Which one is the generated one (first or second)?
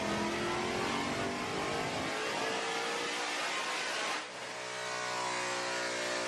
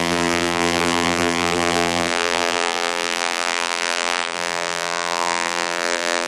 second